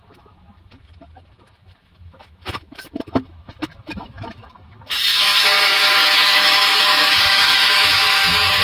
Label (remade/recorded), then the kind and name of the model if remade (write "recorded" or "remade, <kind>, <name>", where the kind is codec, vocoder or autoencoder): remade, autoencoder, DAC-VAE